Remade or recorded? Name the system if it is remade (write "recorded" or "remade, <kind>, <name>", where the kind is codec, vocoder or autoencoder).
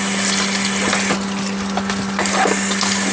recorded